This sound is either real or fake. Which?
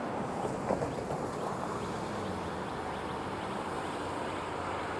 real